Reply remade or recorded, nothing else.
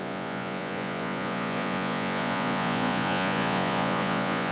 remade